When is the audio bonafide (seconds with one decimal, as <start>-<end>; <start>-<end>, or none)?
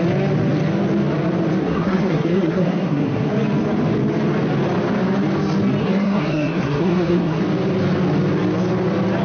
0.0-1.6; 3.3-5.8; 7.4-9.2